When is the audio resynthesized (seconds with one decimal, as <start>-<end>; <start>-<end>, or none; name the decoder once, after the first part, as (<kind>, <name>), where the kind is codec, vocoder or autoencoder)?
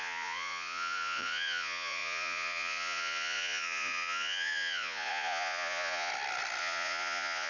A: 0.0-6.1 (vocoder, Vocos); 6.6-7.5